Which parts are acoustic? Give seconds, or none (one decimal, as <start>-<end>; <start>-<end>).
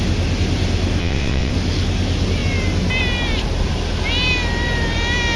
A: 0.0-1.0; 1.5-5.4